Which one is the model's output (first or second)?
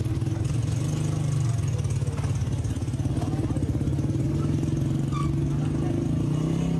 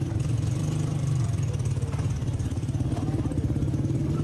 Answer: second